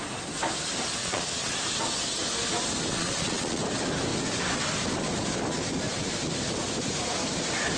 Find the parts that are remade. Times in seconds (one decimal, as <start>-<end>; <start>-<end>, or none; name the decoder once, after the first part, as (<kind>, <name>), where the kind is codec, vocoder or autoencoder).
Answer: 1.0-1.6 (vocoder, Vocos); 2.9-3.6